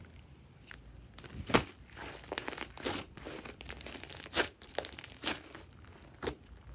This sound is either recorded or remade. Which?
recorded